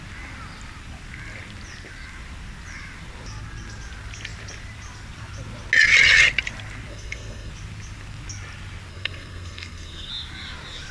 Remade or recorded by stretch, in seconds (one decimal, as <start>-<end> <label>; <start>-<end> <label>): 0.0-6.9 recorded; 6.9-7.5 remade; 7.5-8.9 recorded; 8.9-10.1 remade; 10.1-10.9 recorded